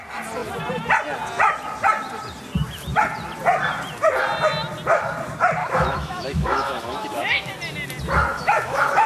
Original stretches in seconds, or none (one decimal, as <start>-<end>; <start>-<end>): 0.0-5.6; 7.5-8.3